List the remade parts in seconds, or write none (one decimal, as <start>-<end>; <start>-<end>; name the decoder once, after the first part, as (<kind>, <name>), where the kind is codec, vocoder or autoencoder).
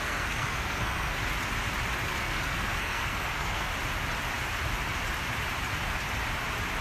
0.0-1.2 (codec, SNAC); 2.1-3.7